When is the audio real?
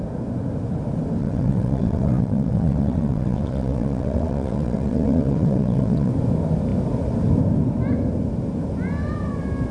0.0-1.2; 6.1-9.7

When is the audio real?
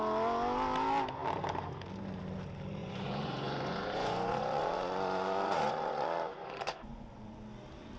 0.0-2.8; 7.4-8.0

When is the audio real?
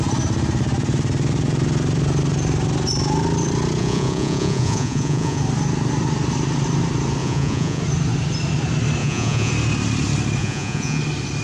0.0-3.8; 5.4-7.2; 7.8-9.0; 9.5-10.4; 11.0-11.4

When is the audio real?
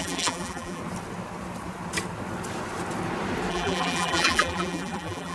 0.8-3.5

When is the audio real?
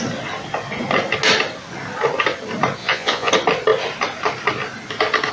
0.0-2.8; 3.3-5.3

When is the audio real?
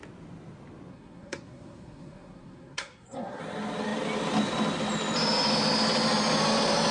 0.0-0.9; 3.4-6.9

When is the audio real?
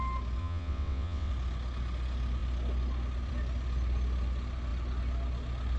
0.0-0.4; 1.3-5.8